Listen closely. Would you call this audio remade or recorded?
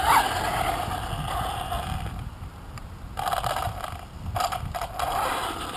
recorded